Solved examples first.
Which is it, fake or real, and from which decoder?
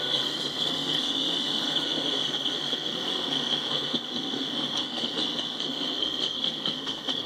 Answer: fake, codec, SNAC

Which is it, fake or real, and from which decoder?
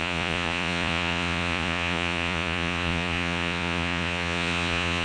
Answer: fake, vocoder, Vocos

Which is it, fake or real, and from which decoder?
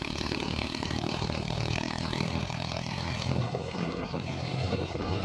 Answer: fake, codec, SNAC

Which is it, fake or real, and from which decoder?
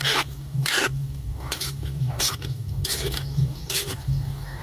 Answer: fake, codec, DAC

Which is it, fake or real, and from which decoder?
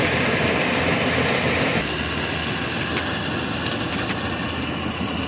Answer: real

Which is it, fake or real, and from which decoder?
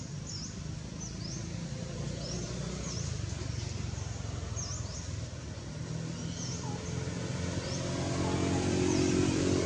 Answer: real